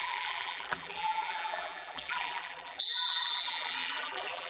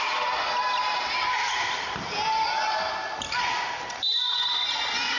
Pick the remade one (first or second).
first